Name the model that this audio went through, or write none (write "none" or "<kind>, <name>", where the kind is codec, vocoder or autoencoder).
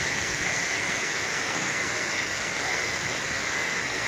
codec, SNAC